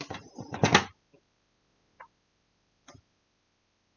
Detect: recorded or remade recorded